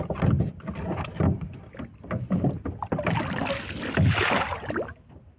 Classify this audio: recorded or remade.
recorded